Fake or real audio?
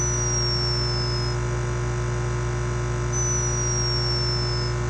real